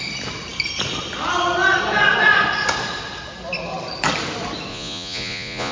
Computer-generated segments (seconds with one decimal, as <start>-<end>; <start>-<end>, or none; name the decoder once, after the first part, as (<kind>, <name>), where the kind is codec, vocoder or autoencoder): 4.7-5.7 (vocoder, Vocos)